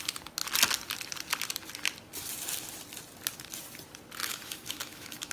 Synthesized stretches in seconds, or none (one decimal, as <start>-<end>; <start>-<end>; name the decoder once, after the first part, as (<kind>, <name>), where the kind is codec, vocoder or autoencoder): 4.2-5.3 (autoencoder, DAC-VAE)